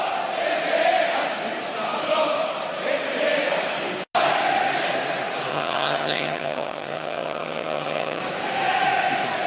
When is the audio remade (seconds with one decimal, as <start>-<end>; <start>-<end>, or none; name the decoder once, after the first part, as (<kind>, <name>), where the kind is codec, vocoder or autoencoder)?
5.5-8.2 (vocoder, HiFi-GAN)